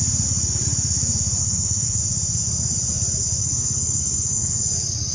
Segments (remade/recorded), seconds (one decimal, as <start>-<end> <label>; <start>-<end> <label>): 0.0-1.4 recorded; 1.4-2.0 remade; 2.0-3.4 recorded; 3.4-4.6 remade; 4.6-5.1 recorded